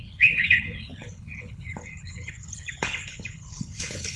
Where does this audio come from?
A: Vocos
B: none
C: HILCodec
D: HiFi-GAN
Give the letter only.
C